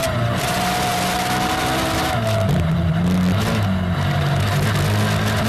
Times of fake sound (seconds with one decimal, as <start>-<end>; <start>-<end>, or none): none